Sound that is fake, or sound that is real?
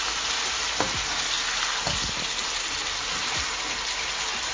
real